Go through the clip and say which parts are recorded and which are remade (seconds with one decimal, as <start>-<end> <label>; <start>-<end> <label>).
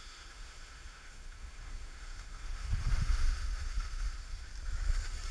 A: 0.0-4.5 remade; 4.5-5.3 recorded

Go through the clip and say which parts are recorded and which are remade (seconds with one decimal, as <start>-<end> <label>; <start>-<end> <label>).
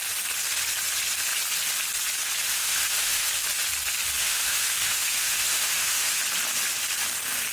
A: 0.0-2.5 recorded; 2.5-3.3 remade; 3.3-4.2 recorded; 4.2-6.2 remade; 6.2-7.5 recorded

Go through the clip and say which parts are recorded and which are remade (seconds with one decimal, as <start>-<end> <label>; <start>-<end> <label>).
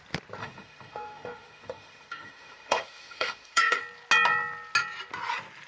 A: 0.0-0.4 recorded; 0.4-3.8 remade; 3.8-5.7 recorded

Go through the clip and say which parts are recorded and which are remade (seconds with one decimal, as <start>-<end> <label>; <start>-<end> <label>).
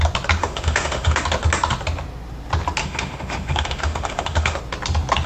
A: 0.0-0.4 recorded; 0.4-1.2 remade; 1.2-2.8 recorded; 2.8-4.6 remade; 4.6-5.3 recorded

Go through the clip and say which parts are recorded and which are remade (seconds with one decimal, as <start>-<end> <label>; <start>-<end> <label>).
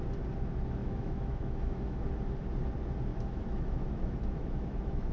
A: 0.0-0.8 recorded; 0.8-2.1 remade; 2.1-3.1 recorded; 3.1-5.1 remade